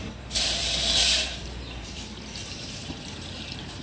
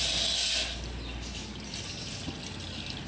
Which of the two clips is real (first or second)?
second